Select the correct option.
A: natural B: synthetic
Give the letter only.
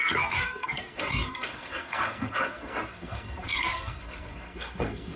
B